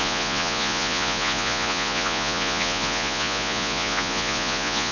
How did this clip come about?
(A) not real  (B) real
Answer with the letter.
A